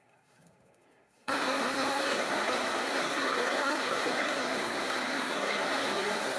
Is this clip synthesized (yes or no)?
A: yes